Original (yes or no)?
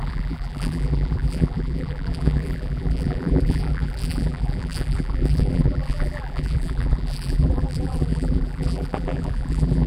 no